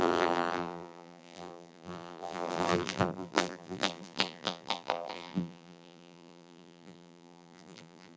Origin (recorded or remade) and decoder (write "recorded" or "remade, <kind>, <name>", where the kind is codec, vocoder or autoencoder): remade, vocoder, BigVGAN v2